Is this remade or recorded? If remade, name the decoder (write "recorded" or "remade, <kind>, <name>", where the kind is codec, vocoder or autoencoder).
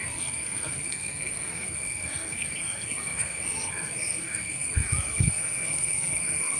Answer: remade, codec, SNAC